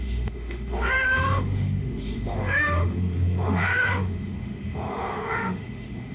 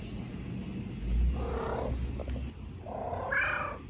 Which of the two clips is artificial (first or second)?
first